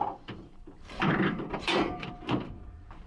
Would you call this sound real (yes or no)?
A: no